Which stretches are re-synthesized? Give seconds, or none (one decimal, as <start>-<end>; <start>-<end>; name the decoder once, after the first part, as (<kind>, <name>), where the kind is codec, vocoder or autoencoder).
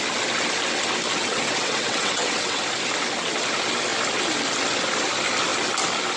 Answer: 1.2-2.6 (vocoder, WaveNeXt)